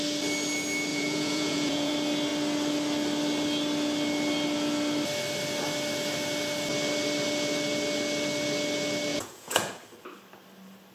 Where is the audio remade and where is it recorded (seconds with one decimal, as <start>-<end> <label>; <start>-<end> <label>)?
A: 0.0-0.9 recorded; 0.9-1.9 remade; 1.9-9.1 recorded; 9.1-9.8 remade; 9.8-10.9 recorded